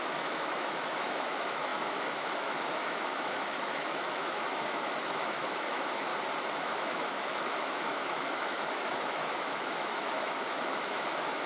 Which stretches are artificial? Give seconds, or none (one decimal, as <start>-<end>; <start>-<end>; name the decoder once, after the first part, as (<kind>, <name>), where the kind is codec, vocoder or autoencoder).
0.0-6.1 (autoencoder, DAC-VAE); 6.6-11.5